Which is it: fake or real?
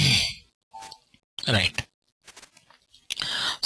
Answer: real